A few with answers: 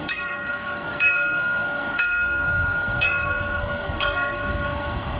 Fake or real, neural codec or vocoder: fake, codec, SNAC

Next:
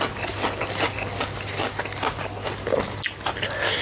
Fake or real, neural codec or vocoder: real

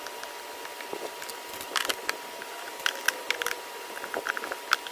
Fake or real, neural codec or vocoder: real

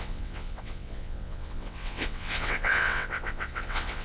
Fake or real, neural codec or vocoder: fake, vocoder, WaveNeXt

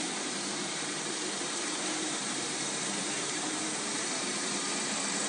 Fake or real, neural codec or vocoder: fake, vocoder, BigVGAN v2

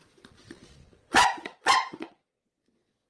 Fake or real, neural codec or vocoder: fake, vocoder, Vocos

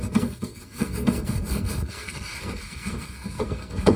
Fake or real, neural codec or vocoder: fake, codec, SNAC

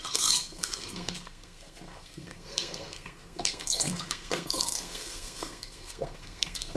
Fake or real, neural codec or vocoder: fake, codec, SNAC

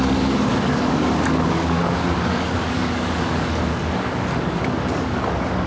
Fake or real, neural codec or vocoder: fake, codec, DAC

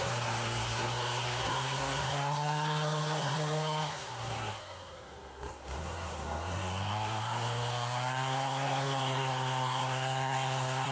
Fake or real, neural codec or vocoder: fake, codec, SNAC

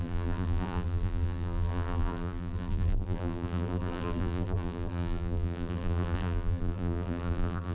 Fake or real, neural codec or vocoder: fake, vocoder, BigVGAN v2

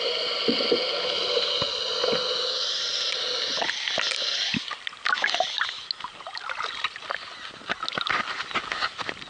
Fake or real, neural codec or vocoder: real